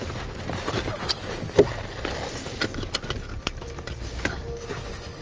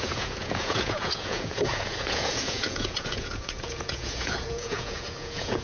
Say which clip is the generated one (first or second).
second